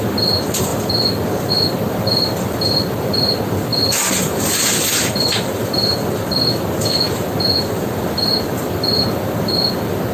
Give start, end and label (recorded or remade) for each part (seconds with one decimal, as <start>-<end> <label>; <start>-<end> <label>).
0.0-10.1 recorded